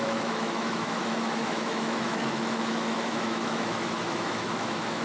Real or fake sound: fake